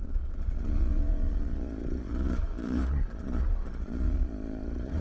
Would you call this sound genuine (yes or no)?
no